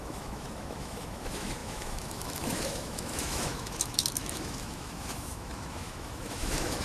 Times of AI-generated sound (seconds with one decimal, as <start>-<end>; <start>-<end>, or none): 0.0-6.8